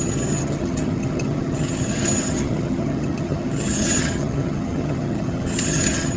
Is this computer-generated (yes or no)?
yes